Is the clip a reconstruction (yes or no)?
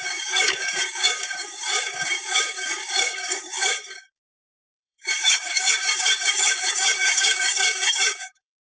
yes